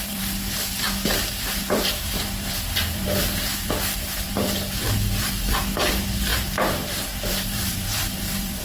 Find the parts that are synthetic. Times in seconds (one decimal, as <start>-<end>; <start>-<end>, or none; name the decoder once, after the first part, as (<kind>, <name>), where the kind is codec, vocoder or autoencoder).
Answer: 0.0-6.3 (vocoder, BigVGAN v2); 6.9-8.6